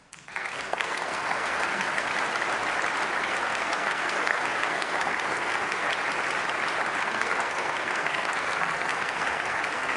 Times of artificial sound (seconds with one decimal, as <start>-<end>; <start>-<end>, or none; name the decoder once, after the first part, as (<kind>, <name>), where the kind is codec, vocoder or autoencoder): 0.0-2.1 (codec, SNAC); 3.2-5.9; 7.0-10.0